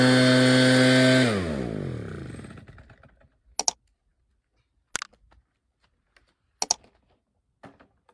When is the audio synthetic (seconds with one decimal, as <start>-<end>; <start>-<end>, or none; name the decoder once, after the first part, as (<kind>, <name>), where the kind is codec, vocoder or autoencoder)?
none